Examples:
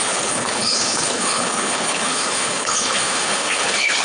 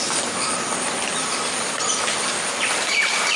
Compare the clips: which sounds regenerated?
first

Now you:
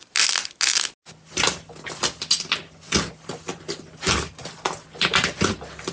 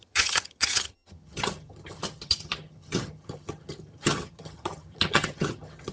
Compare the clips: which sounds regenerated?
second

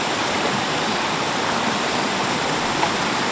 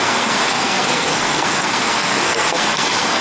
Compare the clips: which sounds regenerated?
second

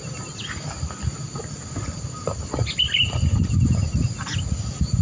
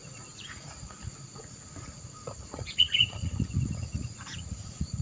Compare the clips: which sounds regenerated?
second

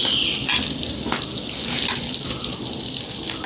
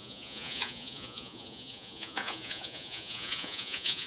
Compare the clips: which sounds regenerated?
second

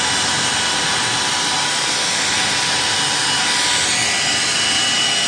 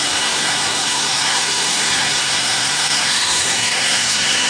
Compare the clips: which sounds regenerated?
second